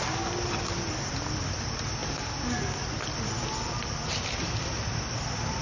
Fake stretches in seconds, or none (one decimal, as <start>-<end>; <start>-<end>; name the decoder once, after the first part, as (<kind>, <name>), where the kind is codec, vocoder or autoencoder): none

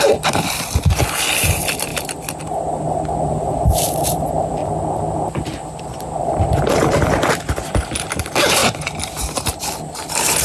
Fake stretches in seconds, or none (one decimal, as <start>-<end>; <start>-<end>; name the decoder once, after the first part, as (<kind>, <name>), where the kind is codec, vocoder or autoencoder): 0.0-1.9 (vocoder, BigVGAN v2); 3.7-4.6; 5.8-10.4

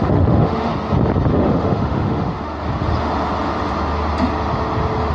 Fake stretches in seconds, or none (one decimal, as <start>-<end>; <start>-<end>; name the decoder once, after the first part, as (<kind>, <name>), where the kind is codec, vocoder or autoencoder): 0.0-0.7 (autoencoder, DAC-VAE); 1.3-2.5

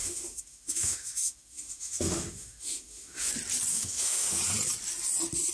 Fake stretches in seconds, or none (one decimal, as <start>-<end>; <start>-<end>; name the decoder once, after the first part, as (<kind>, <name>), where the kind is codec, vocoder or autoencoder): 0.0-3.3 (autoencoder, DAC-VAE); 3.7-4.4

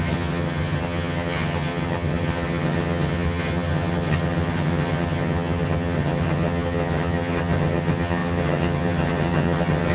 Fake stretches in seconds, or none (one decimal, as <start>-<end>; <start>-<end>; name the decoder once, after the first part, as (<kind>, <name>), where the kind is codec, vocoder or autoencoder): 0.0-9.9 (vocoder, HiFi-GAN)

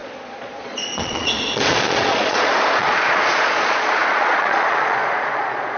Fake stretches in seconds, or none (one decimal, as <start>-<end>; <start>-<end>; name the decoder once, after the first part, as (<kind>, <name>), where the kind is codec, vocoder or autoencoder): 0.0-5.8 (vocoder, Vocos)